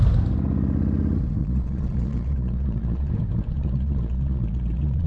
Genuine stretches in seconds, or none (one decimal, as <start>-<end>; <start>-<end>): 0.0-1.4; 3.1-3.5